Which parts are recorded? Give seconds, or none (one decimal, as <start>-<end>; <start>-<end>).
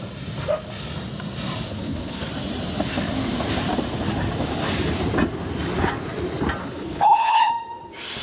0.0-1.7; 2.3-6.6; 7.5-8.2